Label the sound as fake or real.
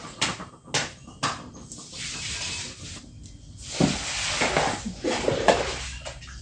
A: real